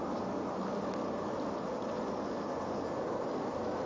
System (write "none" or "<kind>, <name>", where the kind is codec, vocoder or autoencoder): none